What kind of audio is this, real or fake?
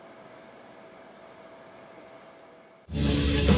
real